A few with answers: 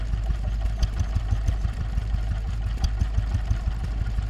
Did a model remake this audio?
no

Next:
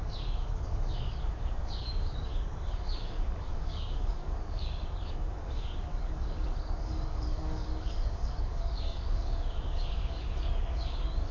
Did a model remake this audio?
yes